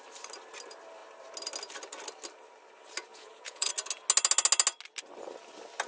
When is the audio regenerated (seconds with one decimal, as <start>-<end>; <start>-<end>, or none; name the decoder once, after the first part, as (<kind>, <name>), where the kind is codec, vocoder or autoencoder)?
3.1-3.7 (vocoder, Vocos)